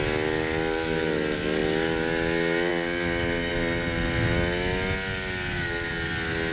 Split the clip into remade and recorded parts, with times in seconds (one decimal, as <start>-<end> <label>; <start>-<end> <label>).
0.0-6.5 recorded